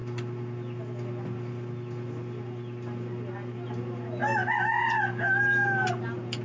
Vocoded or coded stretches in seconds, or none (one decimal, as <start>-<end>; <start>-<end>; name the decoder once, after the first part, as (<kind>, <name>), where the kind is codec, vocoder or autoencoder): none